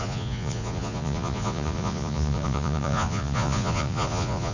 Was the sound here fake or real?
fake